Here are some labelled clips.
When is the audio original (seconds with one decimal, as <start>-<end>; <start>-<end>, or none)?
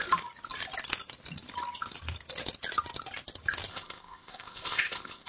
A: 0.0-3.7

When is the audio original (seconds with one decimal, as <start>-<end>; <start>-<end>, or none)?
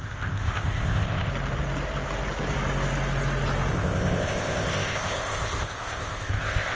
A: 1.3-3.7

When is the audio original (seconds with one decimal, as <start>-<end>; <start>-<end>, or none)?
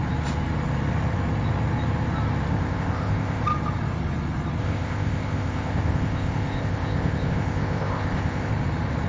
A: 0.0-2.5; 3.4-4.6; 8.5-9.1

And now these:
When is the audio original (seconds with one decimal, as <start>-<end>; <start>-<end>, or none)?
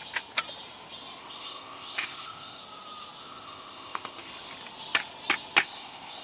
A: 0.0-1.2; 2.6-3.2; 4.3-5.6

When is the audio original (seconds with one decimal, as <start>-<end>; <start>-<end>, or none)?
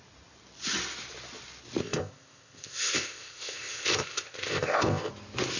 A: 0.0-1.8; 5.1-5.6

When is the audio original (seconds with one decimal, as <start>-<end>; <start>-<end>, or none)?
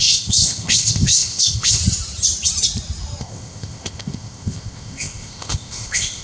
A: 1.8-3.2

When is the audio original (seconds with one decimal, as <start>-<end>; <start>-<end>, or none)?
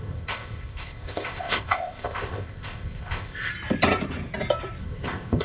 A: 3.5-4.8